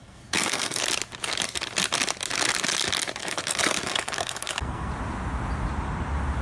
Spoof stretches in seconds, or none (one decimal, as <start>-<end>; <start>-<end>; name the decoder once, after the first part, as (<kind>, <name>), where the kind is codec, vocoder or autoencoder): 0.0-0.8 (codec, SNAC); 3.2-4.9